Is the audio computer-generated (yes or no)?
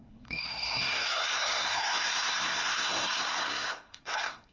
yes